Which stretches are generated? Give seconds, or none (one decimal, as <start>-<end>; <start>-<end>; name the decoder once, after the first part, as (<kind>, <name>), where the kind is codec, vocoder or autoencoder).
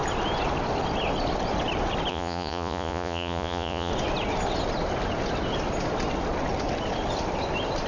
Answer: 2.1-3.9 (vocoder, Vocos)